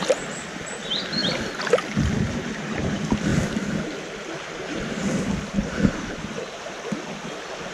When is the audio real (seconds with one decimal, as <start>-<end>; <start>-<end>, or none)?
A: 0.0-7.7